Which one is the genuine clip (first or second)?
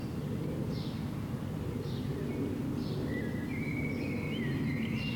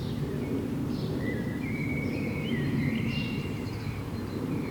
first